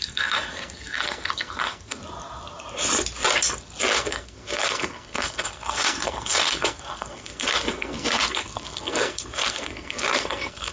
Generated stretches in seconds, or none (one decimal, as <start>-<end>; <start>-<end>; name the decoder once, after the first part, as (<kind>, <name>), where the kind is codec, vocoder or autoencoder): 0.0-2.0 (codec, SNAC); 3.9-10.7